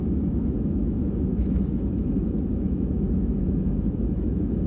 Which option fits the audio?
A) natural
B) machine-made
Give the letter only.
B